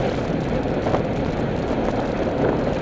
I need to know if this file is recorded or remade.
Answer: recorded